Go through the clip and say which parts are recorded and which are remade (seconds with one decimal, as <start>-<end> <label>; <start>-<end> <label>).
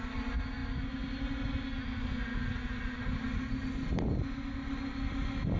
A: 0.0-5.6 recorded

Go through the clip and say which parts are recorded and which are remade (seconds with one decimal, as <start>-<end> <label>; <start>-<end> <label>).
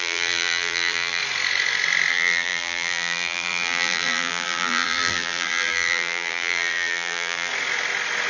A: 0.0-1.2 remade; 1.2-2.1 recorded; 2.1-7.5 remade; 7.5-8.3 recorded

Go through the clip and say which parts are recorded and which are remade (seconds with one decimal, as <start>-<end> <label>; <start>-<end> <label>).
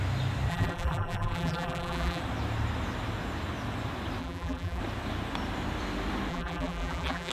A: 0.0-0.5 recorded; 0.5-2.2 remade; 2.2-4.2 recorded; 4.2-4.8 remade; 4.8-6.3 recorded; 6.3-7.3 remade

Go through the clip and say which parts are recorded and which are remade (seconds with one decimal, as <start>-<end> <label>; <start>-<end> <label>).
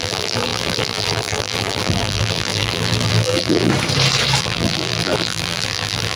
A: 0.0-3.7 remade; 3.7-4.4 recorded; 4.4-6.2 remade